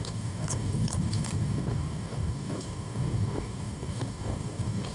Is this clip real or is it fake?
fake